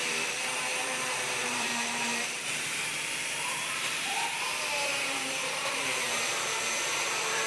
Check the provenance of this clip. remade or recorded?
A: remade